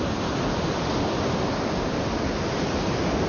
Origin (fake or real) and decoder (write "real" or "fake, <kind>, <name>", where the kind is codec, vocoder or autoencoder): real